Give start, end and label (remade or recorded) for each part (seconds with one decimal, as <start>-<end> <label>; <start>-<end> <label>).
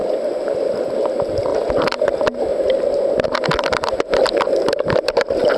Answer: 0.0-5.6 recorded